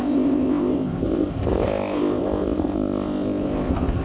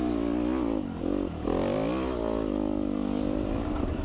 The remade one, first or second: first